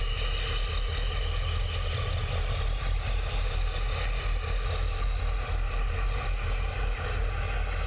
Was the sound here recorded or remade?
recorded